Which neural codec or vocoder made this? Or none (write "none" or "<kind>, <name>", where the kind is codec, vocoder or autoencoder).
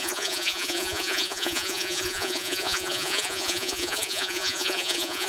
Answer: vocoder, Vocos